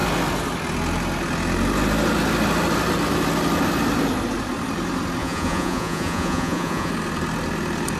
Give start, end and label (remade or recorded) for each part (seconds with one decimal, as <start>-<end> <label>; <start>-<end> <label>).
0.0-5.2 recorded; 5.2-6.9 remade; 6.9-8.0 recorded